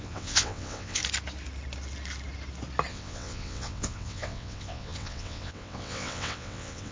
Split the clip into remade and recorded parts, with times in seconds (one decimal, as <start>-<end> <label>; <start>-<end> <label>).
0.0-1.0 remade; 1.0-2.9 recorded; 2.9-6.9 remade